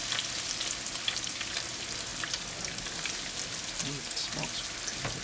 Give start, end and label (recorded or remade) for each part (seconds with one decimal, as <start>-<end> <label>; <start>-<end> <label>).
0.0-5.2 recorded